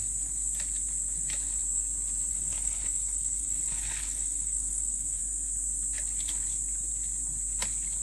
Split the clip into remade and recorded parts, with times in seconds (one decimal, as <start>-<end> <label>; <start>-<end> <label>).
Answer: 0.0-2.3 recorded; 2.3-5.2 remade; 5.2-8.0 recorded